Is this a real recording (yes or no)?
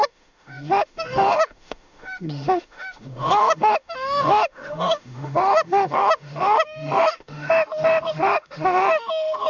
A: no